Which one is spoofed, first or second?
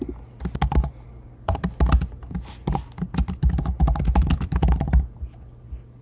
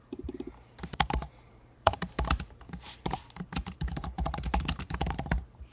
second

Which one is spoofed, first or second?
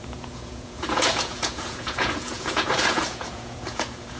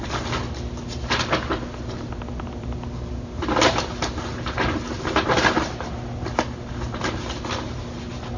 first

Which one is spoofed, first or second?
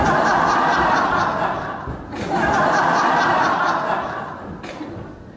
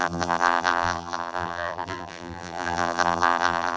second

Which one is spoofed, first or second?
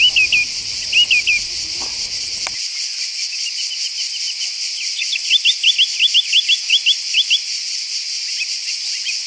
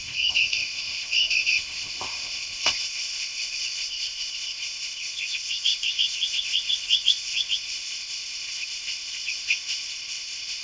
second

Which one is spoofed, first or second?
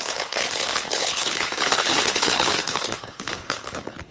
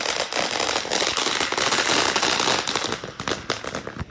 first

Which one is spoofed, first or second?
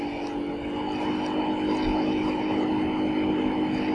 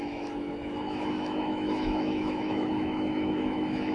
second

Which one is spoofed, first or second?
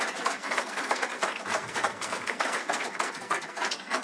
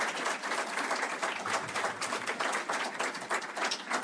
first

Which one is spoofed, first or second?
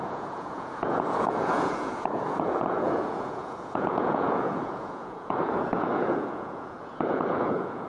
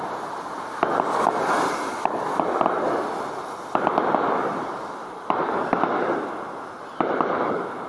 first